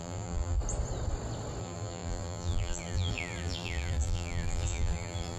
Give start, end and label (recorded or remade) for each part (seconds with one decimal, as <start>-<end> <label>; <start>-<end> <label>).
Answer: 0.0-0.6 remade; 0.6-1.6 recorded; 1.6-5.4 remade